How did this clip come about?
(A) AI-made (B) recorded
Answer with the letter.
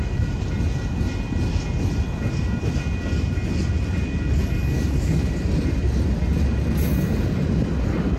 B